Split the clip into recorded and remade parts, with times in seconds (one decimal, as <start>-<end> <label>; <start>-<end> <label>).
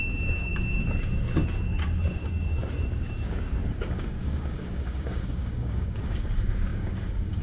0.0-7.4 remade